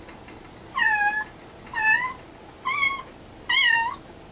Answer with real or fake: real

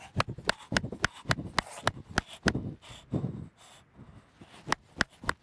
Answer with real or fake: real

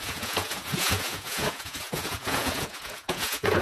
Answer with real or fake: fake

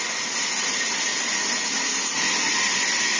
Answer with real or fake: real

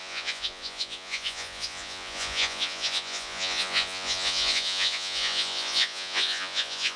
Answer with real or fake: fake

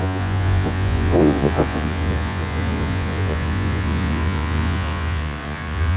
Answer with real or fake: fake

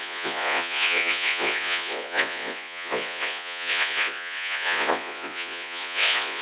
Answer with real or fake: fake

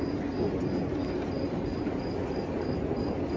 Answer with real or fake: real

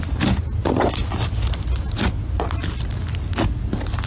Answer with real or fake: real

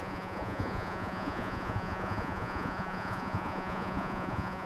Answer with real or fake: fake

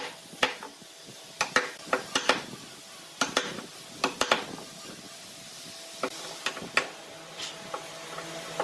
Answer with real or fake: real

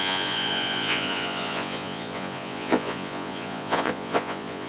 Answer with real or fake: fake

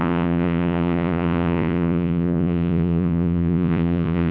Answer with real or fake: fake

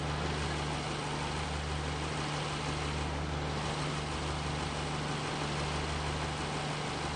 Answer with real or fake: real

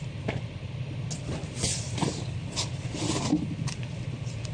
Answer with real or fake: real